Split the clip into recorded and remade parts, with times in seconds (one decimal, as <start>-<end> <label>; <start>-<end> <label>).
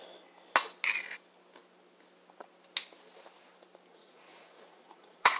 0.0-3.9 recorded; 3.9-5.4 remade